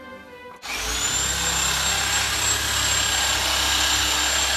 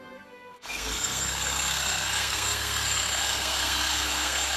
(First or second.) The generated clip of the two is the second